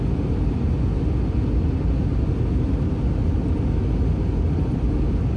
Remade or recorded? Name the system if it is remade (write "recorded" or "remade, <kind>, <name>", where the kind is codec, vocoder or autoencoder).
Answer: recorded